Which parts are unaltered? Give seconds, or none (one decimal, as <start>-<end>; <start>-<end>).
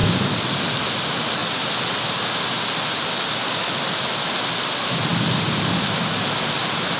0.0-7.0